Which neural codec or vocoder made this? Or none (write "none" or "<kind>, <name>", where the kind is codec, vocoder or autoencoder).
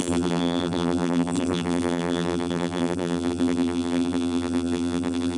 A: vocoder, BigVGAN v2